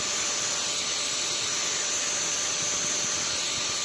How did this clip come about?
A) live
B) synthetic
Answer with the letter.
A